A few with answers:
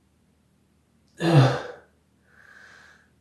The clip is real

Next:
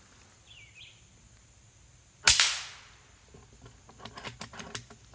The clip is real